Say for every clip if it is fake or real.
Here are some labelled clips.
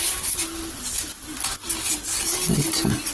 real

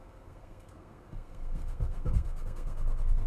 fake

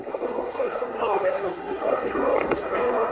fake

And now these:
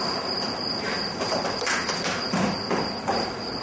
real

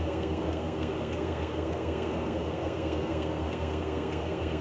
fake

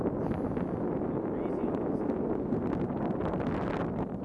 real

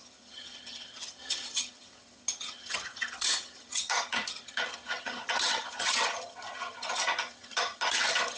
fake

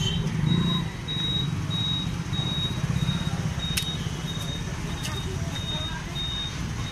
real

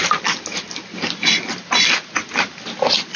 real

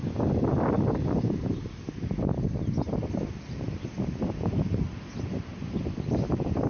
real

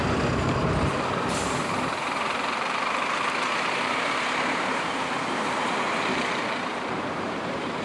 fake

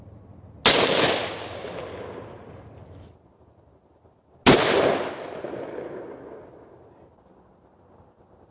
real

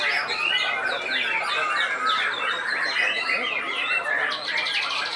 real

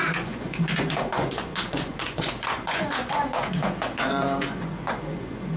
fake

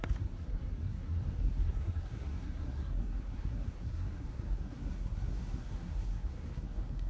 fake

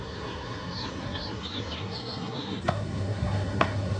fake